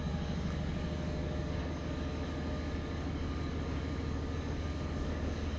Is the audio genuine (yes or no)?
no